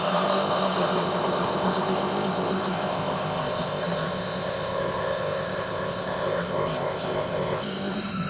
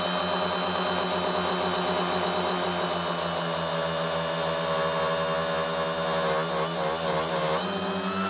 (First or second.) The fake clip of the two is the first